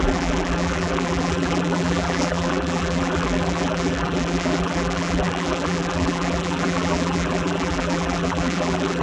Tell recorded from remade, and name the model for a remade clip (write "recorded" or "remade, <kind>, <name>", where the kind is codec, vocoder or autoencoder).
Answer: remade, vocoder, BigVGAN v2